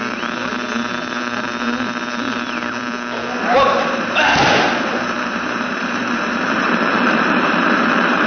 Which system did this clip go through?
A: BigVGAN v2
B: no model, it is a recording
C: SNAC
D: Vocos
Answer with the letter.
A